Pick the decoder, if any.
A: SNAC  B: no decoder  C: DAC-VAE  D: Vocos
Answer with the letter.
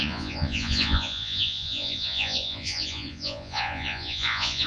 D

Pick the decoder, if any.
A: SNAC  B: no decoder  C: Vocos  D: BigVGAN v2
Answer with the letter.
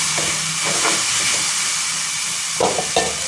B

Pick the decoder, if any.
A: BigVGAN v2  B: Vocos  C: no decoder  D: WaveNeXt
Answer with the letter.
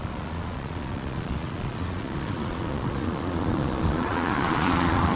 B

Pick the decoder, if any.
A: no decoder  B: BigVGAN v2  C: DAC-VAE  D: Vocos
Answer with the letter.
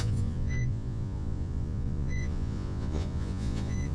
D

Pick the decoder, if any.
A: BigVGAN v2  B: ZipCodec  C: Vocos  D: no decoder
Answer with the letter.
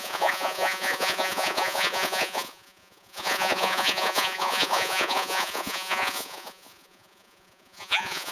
C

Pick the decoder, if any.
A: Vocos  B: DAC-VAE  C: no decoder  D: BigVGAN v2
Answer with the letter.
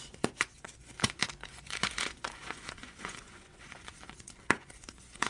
A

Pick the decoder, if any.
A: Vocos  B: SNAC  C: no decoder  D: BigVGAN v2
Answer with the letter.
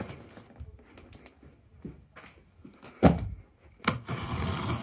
C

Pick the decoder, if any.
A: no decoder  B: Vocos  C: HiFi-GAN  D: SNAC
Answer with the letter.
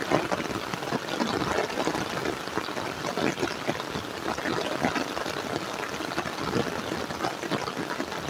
A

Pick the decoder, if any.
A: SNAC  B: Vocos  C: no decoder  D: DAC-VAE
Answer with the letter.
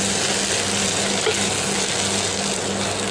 C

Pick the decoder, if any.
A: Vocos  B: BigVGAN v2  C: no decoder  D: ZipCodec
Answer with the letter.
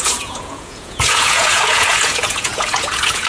A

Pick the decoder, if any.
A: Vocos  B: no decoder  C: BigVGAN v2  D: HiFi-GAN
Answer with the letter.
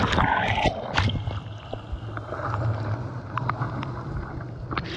B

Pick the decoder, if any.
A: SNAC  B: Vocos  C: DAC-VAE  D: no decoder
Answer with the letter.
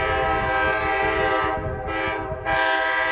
D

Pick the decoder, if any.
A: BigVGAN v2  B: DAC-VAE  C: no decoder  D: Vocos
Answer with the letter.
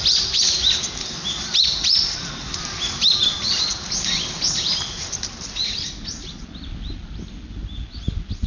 C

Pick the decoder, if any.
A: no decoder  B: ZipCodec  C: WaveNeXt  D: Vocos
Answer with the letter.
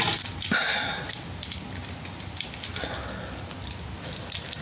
A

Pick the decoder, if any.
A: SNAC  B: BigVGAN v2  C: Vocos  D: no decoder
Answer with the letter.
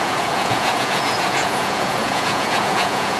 C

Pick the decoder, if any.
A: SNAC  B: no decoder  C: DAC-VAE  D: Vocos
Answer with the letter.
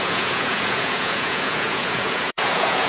D